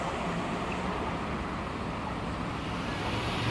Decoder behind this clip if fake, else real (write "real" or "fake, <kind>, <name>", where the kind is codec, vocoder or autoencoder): fake, vocoder, BigVGAN v2